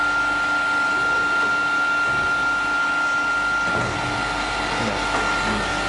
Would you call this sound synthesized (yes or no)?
no